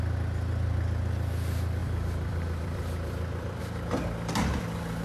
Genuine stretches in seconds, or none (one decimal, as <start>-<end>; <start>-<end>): 0.0-1.8; 3.6-5.0